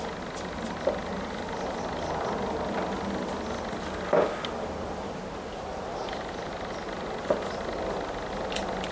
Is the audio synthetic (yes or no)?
no